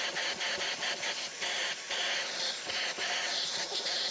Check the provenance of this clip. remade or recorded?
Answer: recorded